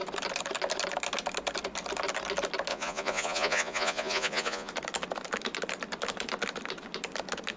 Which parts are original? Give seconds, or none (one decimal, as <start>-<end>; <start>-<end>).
0.0-2.7; 4.7-7.6

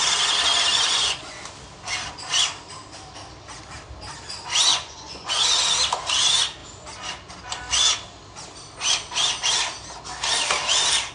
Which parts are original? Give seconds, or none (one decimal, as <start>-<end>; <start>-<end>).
0.0-0.7; 1.4-4.7; 5.4-11.1

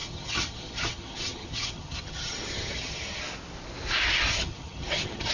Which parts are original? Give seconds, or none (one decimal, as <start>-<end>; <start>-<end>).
3.2-4.3

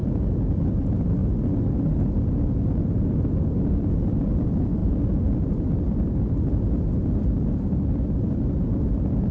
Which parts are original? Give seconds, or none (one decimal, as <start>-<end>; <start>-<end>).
0.0-0.7; 1.2-2.8

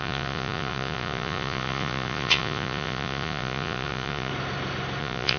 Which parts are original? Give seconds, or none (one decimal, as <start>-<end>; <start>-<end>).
4.3-5.0

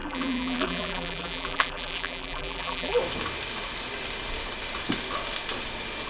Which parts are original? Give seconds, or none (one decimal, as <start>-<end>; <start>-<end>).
3.0-6.1

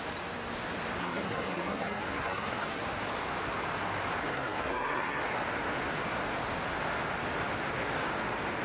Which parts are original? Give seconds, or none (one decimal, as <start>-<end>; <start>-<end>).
0.0-1.0; 2.8-4.3; 5.2-8.6